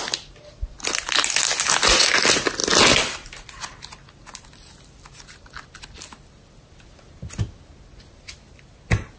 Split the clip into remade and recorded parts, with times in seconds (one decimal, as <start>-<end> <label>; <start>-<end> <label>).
0.0-9.2 recorded

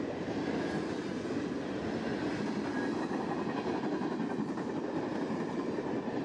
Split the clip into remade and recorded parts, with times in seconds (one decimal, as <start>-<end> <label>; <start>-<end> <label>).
0.0-6.2 recorded

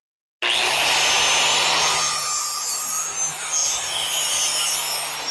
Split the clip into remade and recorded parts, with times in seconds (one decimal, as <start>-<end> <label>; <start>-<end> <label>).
0.0-5.3 recorded

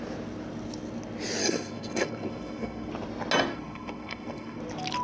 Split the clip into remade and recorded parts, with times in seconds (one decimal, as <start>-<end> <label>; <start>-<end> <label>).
0.0-1.4 recorded; 1.4-2.9 remade; 2.9-3.5 recorded; 3.5-4.6 remade; 4.6-5.0 recorded

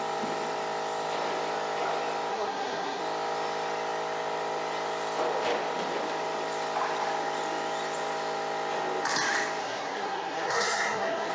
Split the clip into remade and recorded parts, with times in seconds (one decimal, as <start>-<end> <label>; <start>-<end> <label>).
0.0-2.3 recorded; 2.3-3.0 remade; 3.0-9.6 recorded; 9.6-11.3 remade

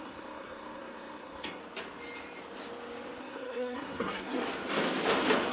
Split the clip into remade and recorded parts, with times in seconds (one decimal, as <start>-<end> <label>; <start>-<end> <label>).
0.0-1.6 remade; 1.6-3.2 recorded; 3.2-4.4 remade; 4.4-5.5 recorded

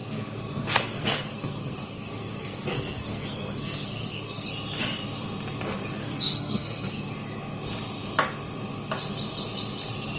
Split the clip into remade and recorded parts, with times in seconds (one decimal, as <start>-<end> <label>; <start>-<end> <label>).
0.0-4.5 remade; 4.5-6.0 recorded; 6.0-7.1 remade; 7.1-10.2 recorded

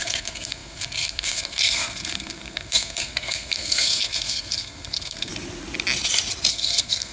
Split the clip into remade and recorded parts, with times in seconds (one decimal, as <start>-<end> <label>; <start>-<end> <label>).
0.0-5.3 remade; 5.3-6.5 recorded; 6.5-7.1 remade